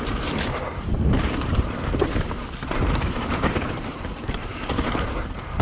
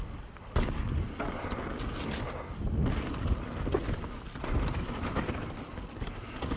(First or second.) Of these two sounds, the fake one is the first